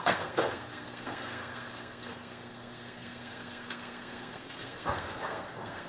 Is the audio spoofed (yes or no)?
yes